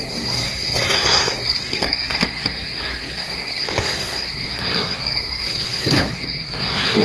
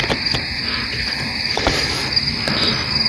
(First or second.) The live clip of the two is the second